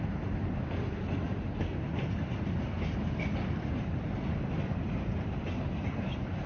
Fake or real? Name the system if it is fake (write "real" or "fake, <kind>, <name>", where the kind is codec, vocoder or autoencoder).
real